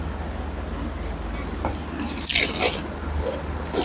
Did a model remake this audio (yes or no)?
no